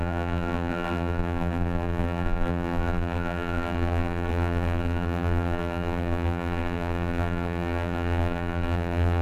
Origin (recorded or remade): remade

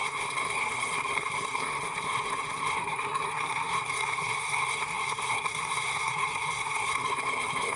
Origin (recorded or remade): remade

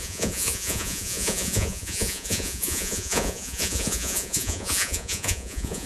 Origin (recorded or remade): remade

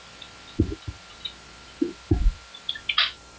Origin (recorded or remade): recorded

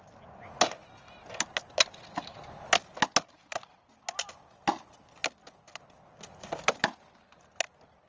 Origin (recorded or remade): recorded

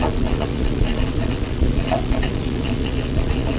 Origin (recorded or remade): remade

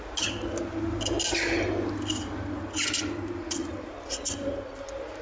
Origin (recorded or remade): recorded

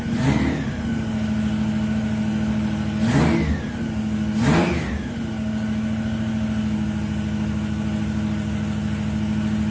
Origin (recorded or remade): recorded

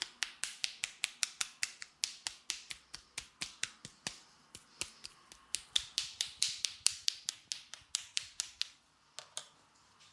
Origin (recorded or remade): recorded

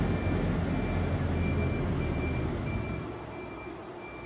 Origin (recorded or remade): recorded